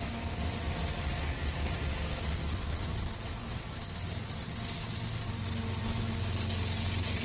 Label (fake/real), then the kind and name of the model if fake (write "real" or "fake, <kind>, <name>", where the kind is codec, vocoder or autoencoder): real